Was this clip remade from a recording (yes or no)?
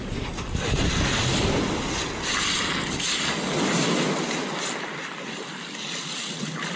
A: no